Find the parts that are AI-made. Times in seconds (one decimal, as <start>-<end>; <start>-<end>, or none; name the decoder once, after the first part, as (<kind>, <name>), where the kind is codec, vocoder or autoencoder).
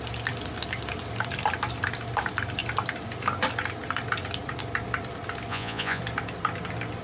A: 5.5-6.0 (vocoder, Vocos)